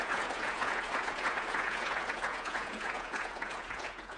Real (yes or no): no